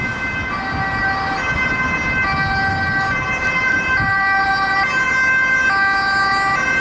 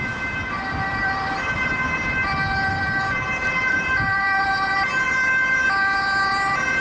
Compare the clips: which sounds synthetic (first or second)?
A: second